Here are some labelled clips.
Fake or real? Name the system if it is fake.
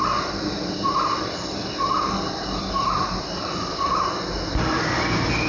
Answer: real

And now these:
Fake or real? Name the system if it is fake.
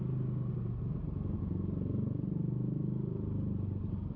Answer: real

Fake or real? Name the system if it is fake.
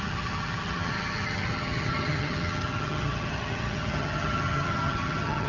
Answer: fake, vocoder, HiFi-GAN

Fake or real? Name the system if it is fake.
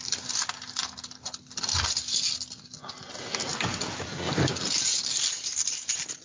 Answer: real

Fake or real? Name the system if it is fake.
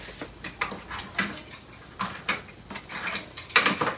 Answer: real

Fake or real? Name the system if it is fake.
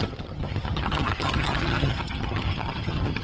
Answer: fake, vocoder, HiFi-GAN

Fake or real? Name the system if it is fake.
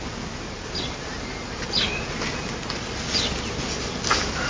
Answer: real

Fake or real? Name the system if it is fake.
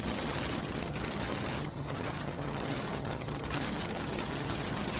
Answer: fake, vocoder, HiFi-GAN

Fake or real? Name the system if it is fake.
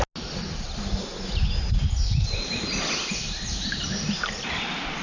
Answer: real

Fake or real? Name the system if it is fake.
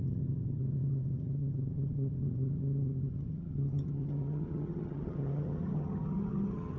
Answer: fake, vocoder, HiFi-GAN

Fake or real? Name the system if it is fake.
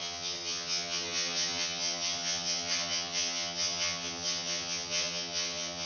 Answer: fake, vocoder, HiFi-GAN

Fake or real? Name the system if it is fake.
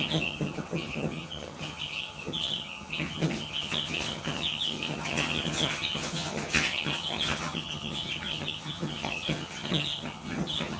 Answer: fake, vocoder, HiFi-GAN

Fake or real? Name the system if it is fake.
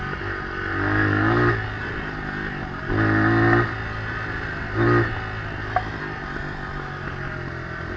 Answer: real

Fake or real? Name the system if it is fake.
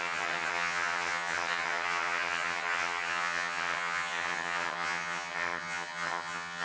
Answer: fake, vocoder, HiFi-GAN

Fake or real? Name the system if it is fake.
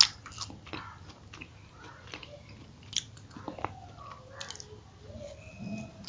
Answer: real